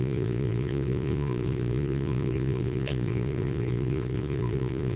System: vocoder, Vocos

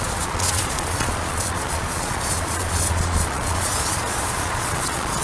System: vocoder, Vocos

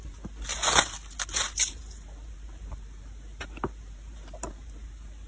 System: none